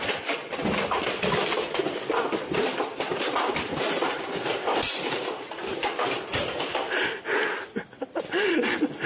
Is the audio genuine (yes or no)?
no